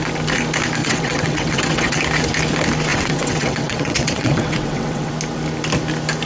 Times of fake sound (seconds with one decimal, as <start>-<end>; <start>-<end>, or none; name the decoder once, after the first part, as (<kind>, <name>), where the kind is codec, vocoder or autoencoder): 0.8-2.0 (vocoder, WaveNeXt); 2.9-5.1